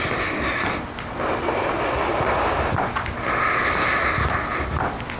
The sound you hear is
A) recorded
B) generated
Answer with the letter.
A